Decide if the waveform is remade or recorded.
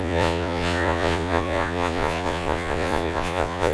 remade